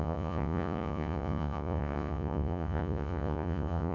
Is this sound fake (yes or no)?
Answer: yes